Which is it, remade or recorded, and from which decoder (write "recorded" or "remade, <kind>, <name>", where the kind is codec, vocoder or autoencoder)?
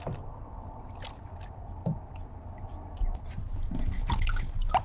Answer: recorded